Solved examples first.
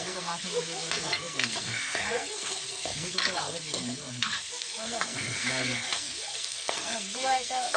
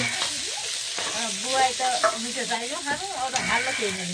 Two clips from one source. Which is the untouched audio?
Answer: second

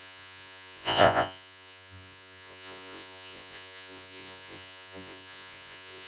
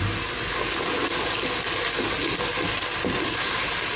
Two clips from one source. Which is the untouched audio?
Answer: second